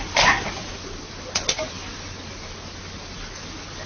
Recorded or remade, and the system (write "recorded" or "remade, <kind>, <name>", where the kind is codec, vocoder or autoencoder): recorded